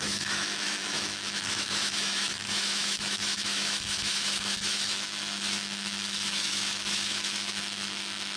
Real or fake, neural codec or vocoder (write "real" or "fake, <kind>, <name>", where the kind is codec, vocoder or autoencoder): fake, autoencoder, DAC-VAE